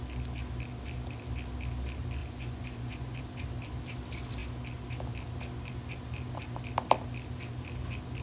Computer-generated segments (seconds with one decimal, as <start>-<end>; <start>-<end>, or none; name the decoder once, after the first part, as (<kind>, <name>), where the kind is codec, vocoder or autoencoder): 2.2-3.2 (vocoder, Vocos)